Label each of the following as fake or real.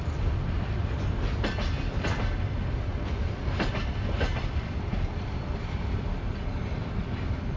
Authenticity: real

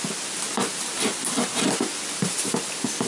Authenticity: real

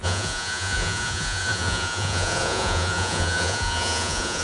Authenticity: fake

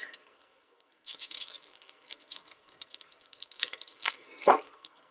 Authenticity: fake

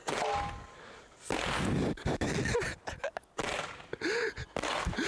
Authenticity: real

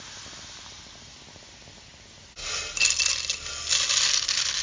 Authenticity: real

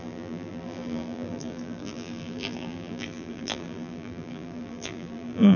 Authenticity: fake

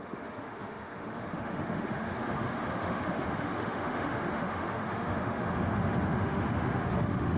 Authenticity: fake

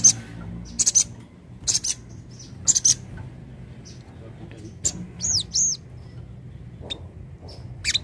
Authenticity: real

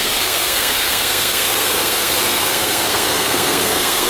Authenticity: fake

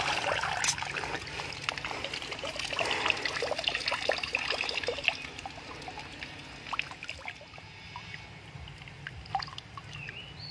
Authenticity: real